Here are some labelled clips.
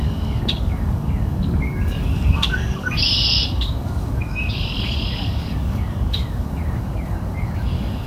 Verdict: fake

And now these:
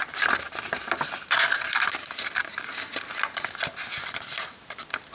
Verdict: real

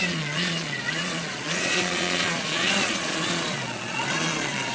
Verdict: fake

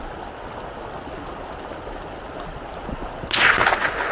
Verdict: real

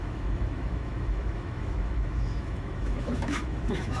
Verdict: fake